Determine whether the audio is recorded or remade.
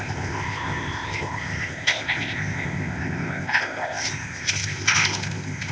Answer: remade